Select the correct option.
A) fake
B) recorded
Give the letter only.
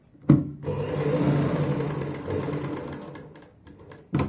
B